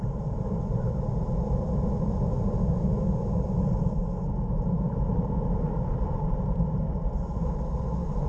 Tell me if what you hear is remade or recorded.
recorded